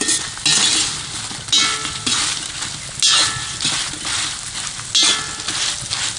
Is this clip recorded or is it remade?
recorded